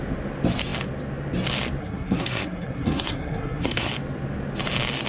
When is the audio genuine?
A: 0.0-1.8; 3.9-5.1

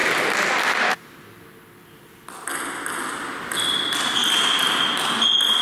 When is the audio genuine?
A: 0.0-5.6

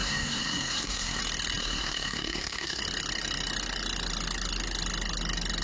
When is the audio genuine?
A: 1.2-1.6; 2.8-5.6

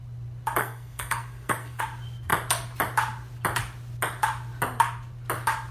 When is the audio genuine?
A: 0.0-0.6; 1.8-5.7